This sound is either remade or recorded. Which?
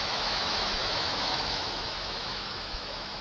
remade